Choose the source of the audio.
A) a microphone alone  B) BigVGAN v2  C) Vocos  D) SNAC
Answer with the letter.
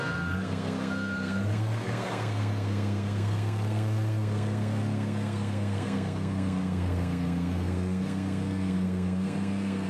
D